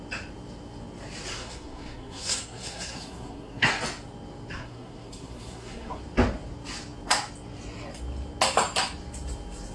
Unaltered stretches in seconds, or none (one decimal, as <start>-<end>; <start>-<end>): 0.0-1.3; 3.7-4.6; 6.0-9.7